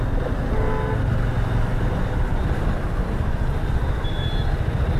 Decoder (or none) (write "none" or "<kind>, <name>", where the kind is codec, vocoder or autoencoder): none